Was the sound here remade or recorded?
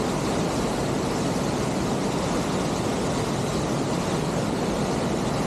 recorded